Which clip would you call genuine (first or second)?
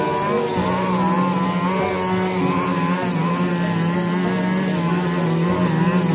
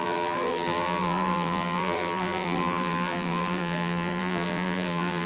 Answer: first